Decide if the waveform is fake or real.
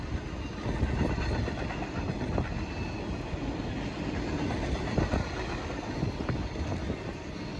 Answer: real